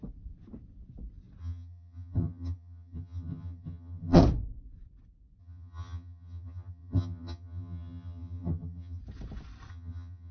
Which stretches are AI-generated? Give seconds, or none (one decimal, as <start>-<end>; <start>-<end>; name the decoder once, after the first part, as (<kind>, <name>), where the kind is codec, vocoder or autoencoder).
1.4-4.2 (vocoder, HiFi-GAN); 5.4-9.0; 9.7-10.3